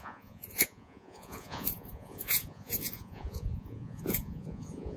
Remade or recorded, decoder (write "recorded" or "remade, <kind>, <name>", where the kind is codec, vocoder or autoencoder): remade, vocoder, Vocos